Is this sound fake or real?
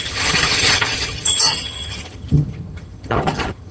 fake